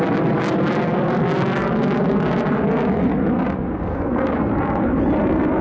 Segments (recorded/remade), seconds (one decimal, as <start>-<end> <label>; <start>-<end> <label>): 0.0-3.9 recorded; 3.9-4.5 remade; 4.5-5.6 recorded